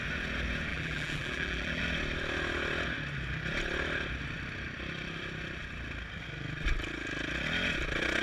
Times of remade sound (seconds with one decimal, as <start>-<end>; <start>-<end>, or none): 0.7-1.8

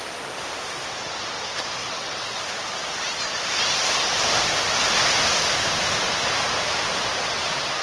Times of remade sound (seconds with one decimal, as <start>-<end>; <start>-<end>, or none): 1.8-2.4